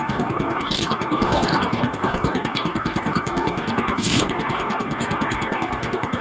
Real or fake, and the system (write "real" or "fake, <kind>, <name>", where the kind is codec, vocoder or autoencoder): fake, codec, DAC